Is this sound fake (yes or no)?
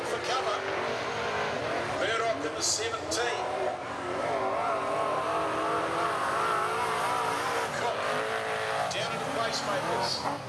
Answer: no